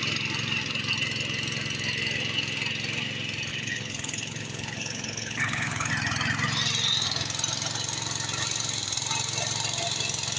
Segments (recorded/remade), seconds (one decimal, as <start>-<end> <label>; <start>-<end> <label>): 0.0-3.5 recorded; 3.5-5.9 remade; 5.9-10.4 recorded

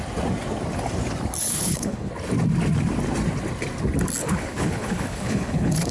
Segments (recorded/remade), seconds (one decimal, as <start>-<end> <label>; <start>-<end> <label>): 0.0-1.5 recorded; 1.5-2.1 remade; 2.1-4.2 recorded; 4.2-5.9 remade

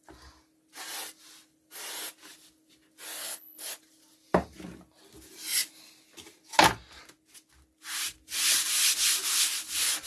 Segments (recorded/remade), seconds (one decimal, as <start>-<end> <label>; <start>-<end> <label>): 0.0-3.2 recorded; 3.2-3.7 remade; 3.7-10.1 recorded

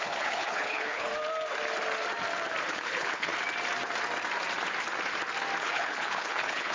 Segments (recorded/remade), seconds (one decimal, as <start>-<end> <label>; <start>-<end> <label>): 0.0-1.1 remade; 1.1-2.7 recorded; 2.7-3.3 remade; 3.3-5.6 recorded; 5.6-6.7 remade

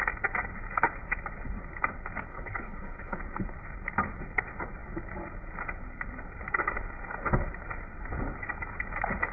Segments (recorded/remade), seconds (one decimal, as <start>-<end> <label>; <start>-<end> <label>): 0.0-2.3 recorded; 2.3-3.2 remade; 3.2-9.3 recorded

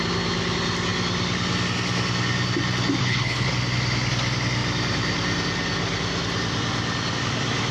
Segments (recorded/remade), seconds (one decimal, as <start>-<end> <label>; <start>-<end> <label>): 0.0-3.0 recorded; 3.0-3.5 remade; 3.5-7.7 recorded

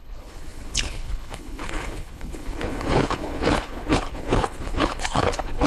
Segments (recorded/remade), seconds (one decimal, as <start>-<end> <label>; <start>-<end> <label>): 0.0-5.7 remade

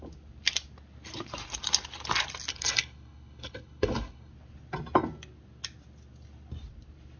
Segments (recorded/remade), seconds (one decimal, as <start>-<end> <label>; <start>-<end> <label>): 0.0-2.5 recorded; 2.5-4.3 remade; 4.3-7.2 recorded